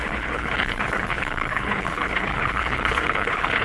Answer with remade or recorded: remade